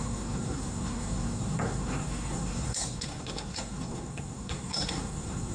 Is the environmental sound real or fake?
fake